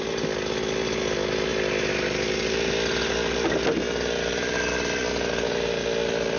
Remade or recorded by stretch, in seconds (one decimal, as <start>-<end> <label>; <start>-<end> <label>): 0.0-6.4 recorded